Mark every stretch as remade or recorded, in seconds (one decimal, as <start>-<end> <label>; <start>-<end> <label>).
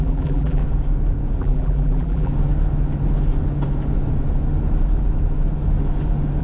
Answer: 0.0-0.6 remade; 0.6-1.4 recorded; 1.4-2.3 remade; 2.3-6.4 recorded